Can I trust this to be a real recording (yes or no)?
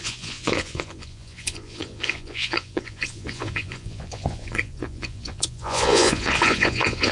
no